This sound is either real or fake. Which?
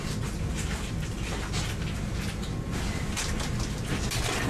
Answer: real